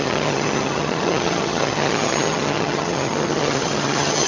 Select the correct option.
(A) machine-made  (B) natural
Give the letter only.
A